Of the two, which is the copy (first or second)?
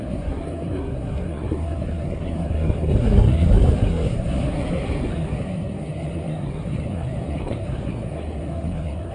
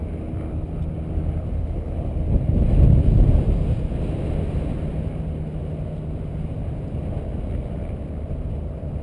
first